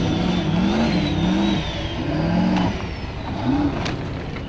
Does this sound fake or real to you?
real